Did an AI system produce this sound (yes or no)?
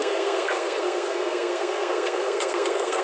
yes